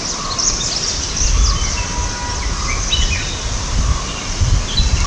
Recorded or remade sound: recorded